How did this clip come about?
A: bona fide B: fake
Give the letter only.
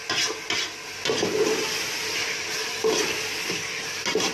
A